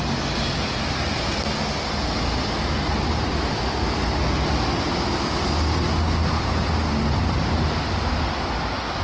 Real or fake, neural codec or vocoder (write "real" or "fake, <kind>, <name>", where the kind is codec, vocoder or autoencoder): real